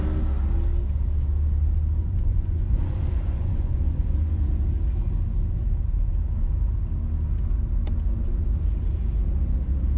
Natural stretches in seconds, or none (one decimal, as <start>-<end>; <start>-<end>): 0.0-2.0; 4.4-10.0